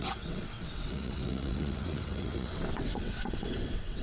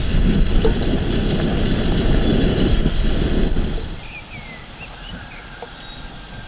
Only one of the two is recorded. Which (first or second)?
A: second